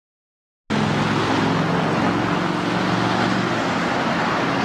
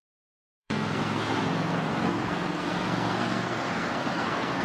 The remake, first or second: second